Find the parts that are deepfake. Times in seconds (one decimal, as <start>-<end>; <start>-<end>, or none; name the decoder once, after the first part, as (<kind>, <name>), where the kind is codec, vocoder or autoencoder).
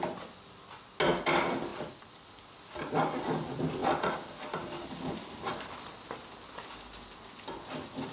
1.7-2.3 (vocoder, BigVGAN v2); 3.8-5.1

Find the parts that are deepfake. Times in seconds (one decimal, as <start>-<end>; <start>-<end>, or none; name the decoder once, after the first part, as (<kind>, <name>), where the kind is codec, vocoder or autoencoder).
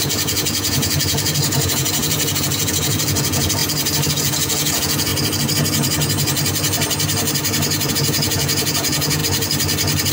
0.0-3.6 (vocoder, Vocos); 4.1-5.1; 7.9-9.2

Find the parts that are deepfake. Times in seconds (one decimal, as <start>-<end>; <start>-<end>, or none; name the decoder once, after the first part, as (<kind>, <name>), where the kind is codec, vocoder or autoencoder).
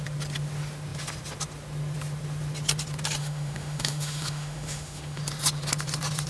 3.2-5.2 (autoencoder, DAC-VAE)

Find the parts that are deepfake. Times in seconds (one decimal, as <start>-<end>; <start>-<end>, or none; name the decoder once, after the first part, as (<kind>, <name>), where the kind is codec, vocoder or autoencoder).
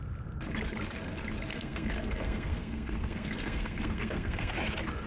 1.5-4.5 (codec, SNAC)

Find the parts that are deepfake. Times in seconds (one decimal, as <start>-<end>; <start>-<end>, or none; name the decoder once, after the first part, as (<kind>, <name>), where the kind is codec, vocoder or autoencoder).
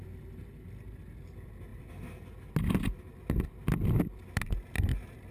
none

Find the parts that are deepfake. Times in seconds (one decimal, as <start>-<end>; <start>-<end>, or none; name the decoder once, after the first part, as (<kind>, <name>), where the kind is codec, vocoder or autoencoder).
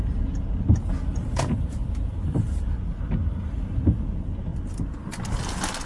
1.1-2.7 (vocoder, BigVGAN v2); 4.5-5.0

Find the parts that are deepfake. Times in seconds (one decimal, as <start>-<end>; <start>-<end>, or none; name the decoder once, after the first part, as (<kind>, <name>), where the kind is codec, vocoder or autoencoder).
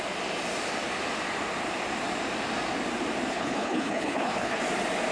3.3-4.6 (codec, HILCodec)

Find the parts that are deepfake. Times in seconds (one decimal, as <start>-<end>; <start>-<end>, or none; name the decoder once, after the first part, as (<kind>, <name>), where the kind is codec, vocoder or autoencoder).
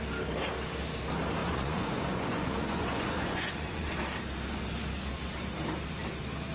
1.4-4.0 (vocoder, Vocos)